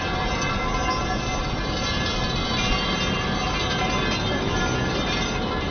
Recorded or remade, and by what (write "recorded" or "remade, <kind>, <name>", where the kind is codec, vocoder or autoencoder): recorded